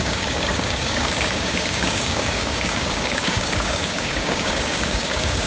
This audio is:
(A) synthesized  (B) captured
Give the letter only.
A